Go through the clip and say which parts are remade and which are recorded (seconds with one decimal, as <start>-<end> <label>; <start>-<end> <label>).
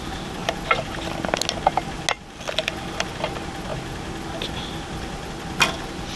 0.0-6.2 recorded